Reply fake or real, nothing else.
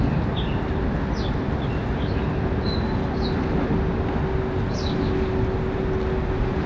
real